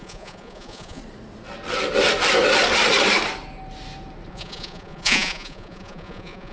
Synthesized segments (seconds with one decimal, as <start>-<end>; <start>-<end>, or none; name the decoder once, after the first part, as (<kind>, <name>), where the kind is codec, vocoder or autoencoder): 0.0-1.0 (vocoder, Vocos); 4.3-6.5